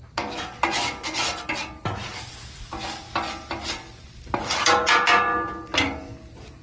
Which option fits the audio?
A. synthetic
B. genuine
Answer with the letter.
B